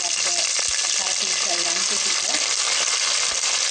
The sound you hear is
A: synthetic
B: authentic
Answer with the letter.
B